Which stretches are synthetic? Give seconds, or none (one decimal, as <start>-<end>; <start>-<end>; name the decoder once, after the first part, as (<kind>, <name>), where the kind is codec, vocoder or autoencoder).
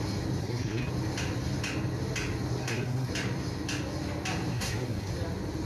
0.4-0.9 (codec, SNAC); 2.6-3.1; 4.5-5.1